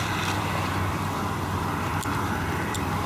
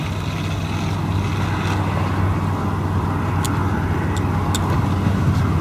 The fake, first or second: first